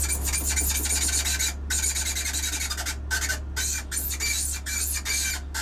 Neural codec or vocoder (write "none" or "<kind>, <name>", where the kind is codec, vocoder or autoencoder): none